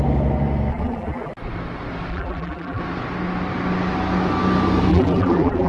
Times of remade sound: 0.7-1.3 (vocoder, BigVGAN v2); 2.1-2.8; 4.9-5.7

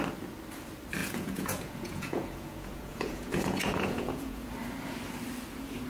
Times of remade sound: 1.0-4.5 (vocoder, Vocos)

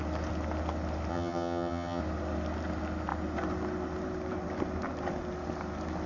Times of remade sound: 1.1-2.0 (vocoder, HiFi-GAN)